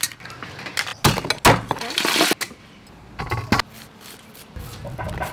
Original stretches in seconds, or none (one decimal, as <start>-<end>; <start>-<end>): 0.0-5.3